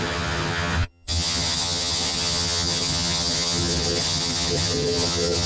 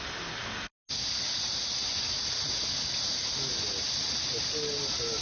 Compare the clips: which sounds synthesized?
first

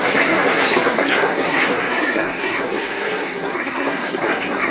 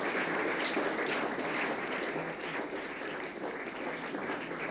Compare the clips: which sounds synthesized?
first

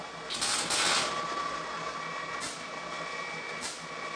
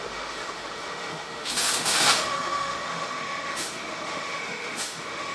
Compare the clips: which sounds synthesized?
second